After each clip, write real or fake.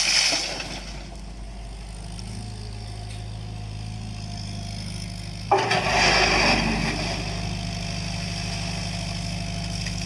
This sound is real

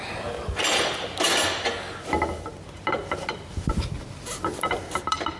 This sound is real